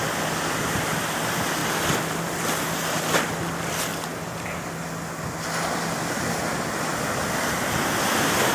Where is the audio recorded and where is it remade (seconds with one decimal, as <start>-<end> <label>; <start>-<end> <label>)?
0.0-1.6 recorded; 1.6-2.2 remade; 2.2-8.5 recorded